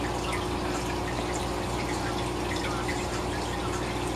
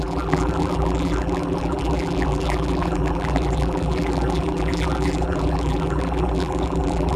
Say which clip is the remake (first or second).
second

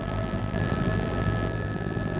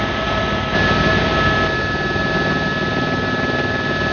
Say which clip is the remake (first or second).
first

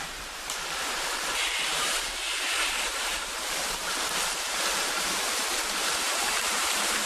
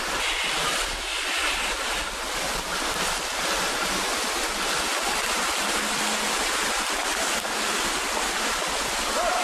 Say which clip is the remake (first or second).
first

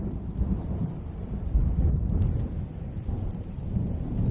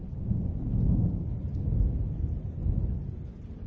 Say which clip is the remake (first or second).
first